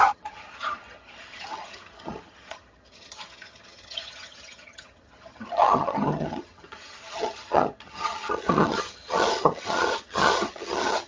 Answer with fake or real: fake